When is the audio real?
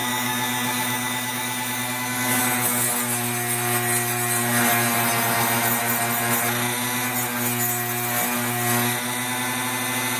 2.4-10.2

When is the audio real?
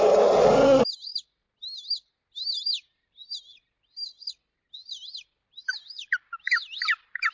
0.0-7.3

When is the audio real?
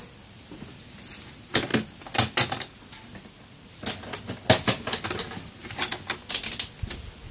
0.0-7.3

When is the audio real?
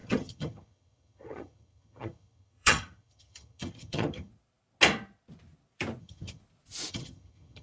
4.3-6.0; 6.4-6.9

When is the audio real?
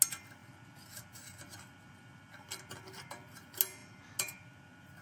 0.0-5.0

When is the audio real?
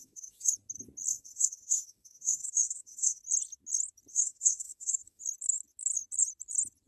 0.5-1.1; 3.2-4.1; 5.2-6.9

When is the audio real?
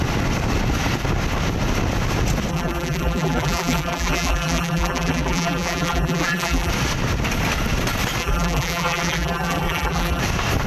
0.0-2.5; 6.7-8.2; 10.2-10.7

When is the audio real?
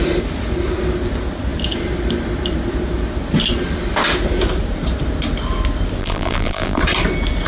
0.0-6.0; 6.8-7.5